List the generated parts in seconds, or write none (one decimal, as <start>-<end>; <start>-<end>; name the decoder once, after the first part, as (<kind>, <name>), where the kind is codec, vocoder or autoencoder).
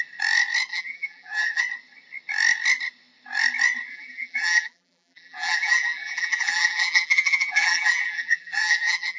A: 0.7-1.6 (vocoder, BigVGAN v2); 3.9-9.2